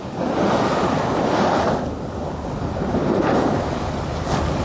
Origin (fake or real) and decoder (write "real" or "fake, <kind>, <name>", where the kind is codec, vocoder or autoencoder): real